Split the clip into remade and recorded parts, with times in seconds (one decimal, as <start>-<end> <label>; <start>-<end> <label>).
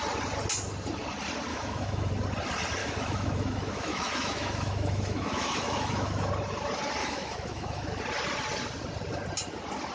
0.0-1.5 recorded; 1.5-2.1 remade; 2.1-2.8 recorded; 2.8-6.3 remade; 6.3-7.0 recorded; 7.0-8.0 remade; 8.0-9.9 recorded